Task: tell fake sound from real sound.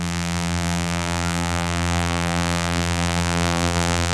fake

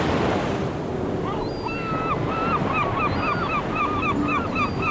real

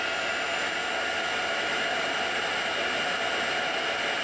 real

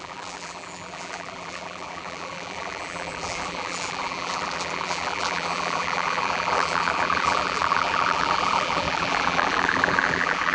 fake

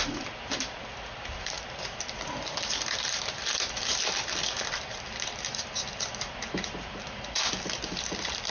fake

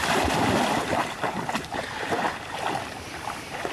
fake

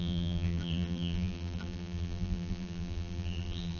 fake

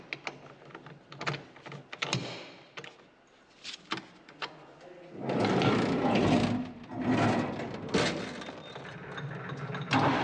real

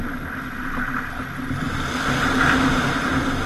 real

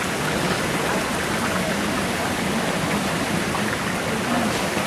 real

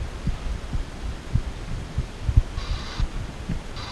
real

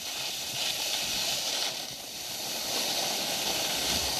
real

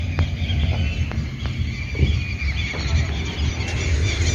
real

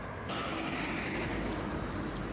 real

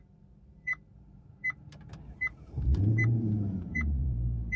fake